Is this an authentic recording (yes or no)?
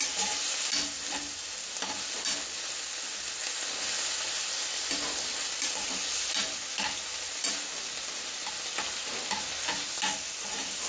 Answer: yes